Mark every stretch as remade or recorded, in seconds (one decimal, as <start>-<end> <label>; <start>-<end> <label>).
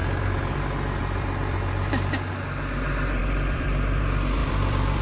0.0-0.6 remade; 0.6-1.0 recorded; 1.0-1.9 remade; 1.9-3.2 recorded; 3.2-4.0 remade; 4.0-4.4 recorded; 4.4-5.0 remade